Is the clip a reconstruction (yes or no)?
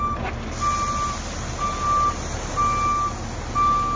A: no